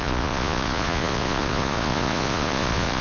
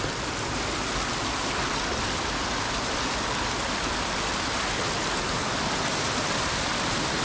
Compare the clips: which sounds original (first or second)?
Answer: second